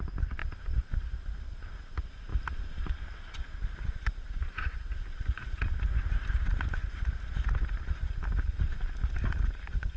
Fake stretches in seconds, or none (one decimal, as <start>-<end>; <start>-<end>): 0.4-1.4; 2.3-2.9; 4.2-4.9